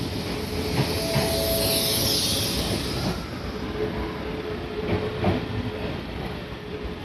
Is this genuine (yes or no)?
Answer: yes